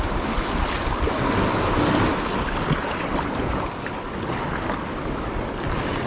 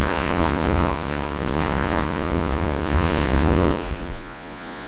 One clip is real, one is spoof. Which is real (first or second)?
first